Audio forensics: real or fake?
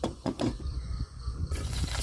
fake